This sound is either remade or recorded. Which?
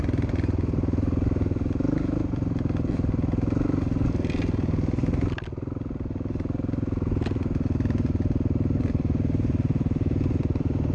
recorded